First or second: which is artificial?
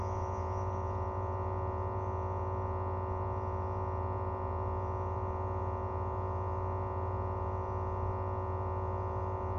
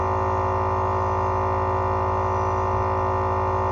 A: first